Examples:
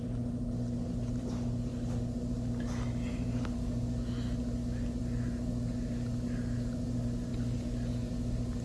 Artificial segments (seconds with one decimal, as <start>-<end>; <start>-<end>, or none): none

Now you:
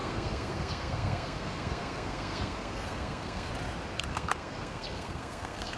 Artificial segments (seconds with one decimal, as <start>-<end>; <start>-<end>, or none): 0.0-3.5; 4.1-5.8

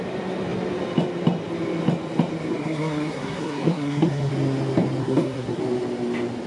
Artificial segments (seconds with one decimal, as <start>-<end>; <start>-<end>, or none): 2.5-4.3; 5.0-5.6

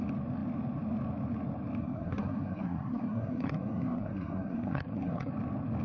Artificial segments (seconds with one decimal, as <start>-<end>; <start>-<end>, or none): 1.8-5.3